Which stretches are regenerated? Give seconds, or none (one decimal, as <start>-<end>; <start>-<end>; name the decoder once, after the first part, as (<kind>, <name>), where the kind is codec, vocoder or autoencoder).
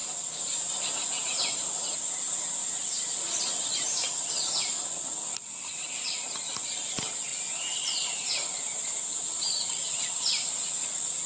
0.0-4.3 (vocoder, BigVGAN v2); 7.3-9.1